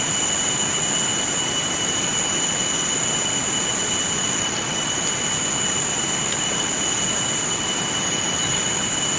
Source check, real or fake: real